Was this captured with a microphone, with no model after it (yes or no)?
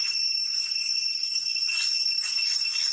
yes